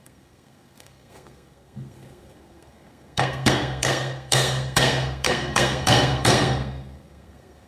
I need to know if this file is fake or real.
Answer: fake